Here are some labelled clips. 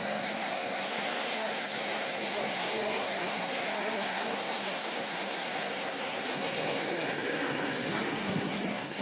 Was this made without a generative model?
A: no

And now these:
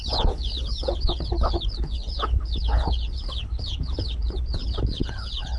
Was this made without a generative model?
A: no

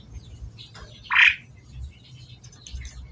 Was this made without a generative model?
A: yes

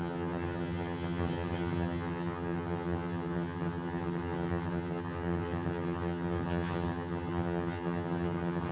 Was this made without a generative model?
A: no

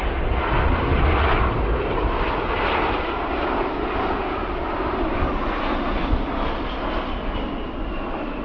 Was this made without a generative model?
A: yes